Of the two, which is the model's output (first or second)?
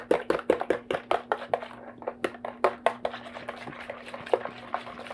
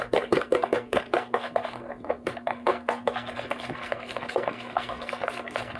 second